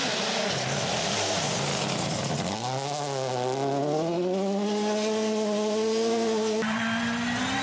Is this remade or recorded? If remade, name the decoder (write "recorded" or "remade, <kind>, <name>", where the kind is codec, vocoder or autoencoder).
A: recorded